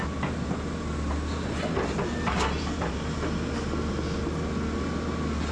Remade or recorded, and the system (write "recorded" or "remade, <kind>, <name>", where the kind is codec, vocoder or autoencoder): recorded